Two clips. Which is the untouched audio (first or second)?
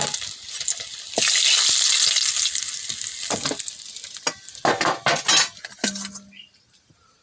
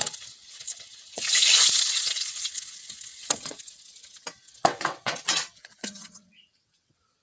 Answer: first